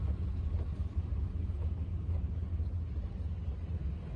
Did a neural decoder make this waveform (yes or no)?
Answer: no